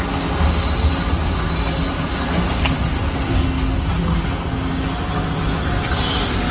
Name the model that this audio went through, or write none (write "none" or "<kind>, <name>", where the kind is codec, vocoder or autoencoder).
none